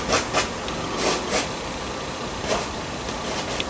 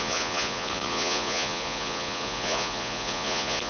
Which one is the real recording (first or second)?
first